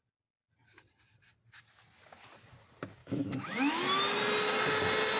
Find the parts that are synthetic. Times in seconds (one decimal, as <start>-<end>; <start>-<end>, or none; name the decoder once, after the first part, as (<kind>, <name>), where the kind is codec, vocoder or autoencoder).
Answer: 3.0-3.8 (autoencoder, DAC-VAE)